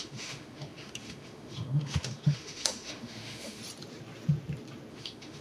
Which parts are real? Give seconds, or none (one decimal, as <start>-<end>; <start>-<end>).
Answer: 3.6-4.9